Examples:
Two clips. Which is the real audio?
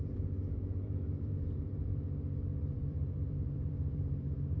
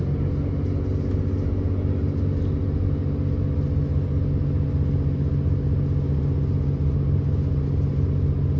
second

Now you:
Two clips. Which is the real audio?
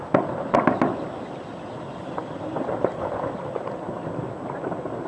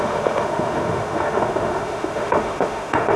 first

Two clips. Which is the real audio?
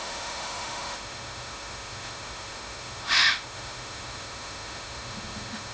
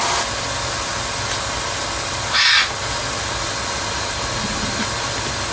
second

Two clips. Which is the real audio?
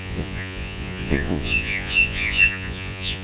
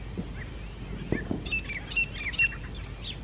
second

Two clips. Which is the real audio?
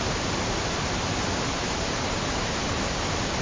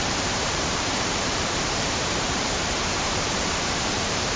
first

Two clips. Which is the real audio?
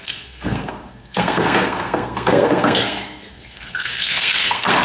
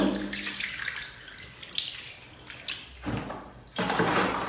second